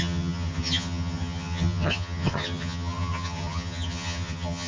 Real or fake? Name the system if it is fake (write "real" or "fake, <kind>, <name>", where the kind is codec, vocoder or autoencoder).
fake, vocoder, HiFi-GAN